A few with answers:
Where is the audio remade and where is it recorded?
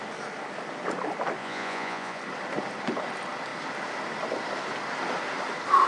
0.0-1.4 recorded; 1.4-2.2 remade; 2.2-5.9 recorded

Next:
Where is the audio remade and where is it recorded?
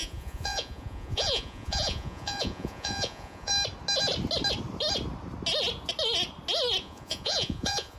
0.0-3.5 remade; 3.5-6.8 recorded; 6.8-8.0 remade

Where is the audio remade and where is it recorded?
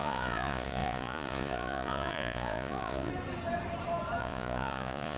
0.0-3.1 remade; 3.1-4.2 recorded; 4.2-5.2 remade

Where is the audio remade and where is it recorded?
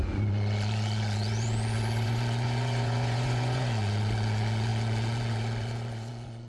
0.0-6.5 remade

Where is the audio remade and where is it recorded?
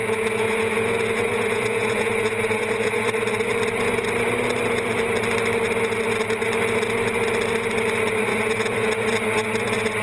0.0-3.0 remade; 3.0-8.3 recorded; 8.3-9.1 remade; 9.1-10.0 recorded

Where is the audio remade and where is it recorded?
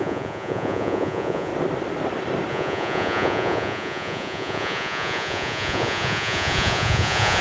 0.0-1.5 remade; 1.5-2.5 recorded; 2.5-7.4 remade